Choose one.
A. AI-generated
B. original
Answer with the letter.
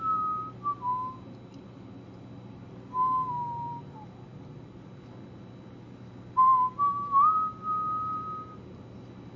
B